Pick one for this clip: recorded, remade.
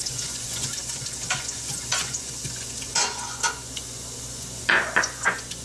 remade